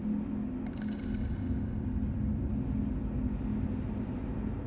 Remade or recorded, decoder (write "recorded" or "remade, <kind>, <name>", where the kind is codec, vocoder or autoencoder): recorded